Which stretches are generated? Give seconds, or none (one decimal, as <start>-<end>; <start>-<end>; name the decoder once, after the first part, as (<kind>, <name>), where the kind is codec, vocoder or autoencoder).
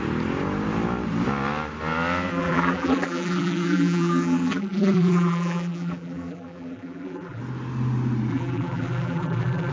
2.3-7.4 (vocoder, BigVGAN v2); 8.3-9.7